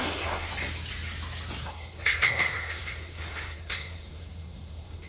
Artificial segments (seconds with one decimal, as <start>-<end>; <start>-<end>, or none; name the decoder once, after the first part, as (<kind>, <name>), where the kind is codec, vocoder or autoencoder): 0.0-0.5 (codec, SNAC); 1.6-5.1